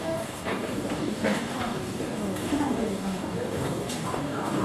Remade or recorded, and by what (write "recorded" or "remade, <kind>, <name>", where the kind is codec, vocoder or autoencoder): remade, codec, DAC